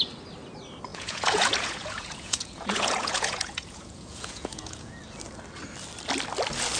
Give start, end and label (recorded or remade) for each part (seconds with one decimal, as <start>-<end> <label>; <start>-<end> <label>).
0.0-0.9 recorded; 0.9-5.0 remade; 5.0-6.8 recorded